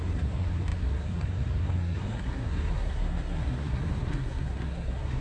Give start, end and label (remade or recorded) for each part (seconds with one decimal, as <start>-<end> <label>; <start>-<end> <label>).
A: 0.0-5.2 remade